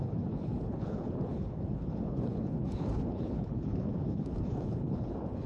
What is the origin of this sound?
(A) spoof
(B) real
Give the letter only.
A